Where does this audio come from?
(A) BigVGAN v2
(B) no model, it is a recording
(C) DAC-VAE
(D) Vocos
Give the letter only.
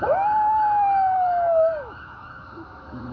C